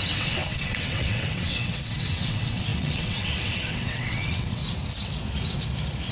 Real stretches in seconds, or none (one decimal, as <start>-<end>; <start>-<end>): 4.6-6.1